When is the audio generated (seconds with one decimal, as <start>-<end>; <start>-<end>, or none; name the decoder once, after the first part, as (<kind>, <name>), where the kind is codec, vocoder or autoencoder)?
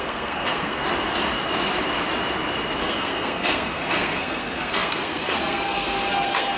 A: 0.0-0.8 (codec, SNAC); 2.8-6.6